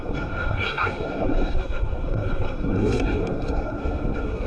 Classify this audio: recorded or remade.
remade